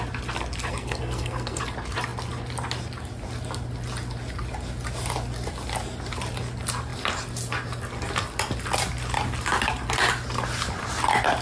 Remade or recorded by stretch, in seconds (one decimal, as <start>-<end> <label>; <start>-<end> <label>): 0.0-0.7 recorded; 0.7-1.6 remade; 1.6-11.4 recorded